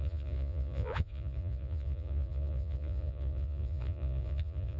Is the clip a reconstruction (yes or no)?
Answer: yes